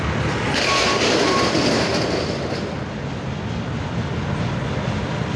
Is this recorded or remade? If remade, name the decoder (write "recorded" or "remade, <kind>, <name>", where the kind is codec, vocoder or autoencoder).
recorded